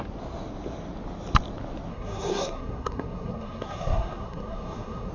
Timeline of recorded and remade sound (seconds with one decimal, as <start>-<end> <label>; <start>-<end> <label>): 0.0-1.9 recorded; 1.9-5.1 remade